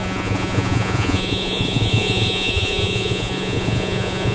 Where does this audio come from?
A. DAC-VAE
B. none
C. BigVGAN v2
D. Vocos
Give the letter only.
D